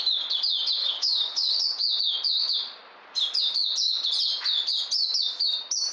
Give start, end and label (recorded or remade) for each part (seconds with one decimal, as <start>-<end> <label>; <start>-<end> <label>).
0.0-0.8 recorded; 0.8-1.6 remade; 1.6-5.9 recorded